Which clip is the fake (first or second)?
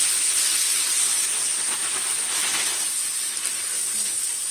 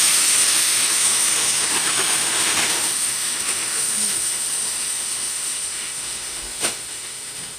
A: second